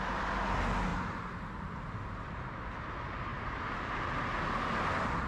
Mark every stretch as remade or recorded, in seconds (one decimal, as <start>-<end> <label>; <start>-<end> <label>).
0.0-0.9 recorded; 0.9-1.8 remade; 1.8-3.3 recorded; 3.3-4.0 remade; 4.0-5.3 recorded